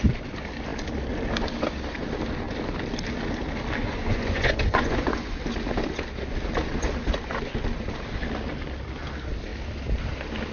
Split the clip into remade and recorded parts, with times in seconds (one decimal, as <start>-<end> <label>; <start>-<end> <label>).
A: 0.0-3.8 recorded; 3.8-5.3 remade; 5.3-10.5 recorded